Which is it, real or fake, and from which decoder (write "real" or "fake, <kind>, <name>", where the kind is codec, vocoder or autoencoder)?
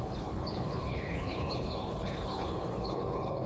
fake, codec, HILCodec